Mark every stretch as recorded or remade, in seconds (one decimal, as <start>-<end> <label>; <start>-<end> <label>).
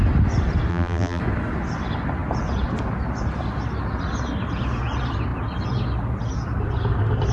0.0-0.7 recorded; 0.7-1.2 remade; 1.2-7.3 recorded